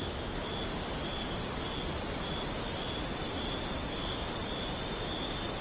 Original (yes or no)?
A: yes